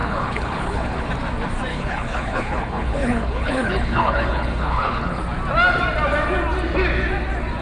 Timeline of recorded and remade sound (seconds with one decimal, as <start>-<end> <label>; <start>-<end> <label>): 0.0-1.1 remade; 1.1-1.7 recorded; 1.7-5.2 remade; 5.2-7.6 recorded